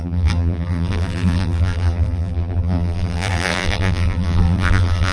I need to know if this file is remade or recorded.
remade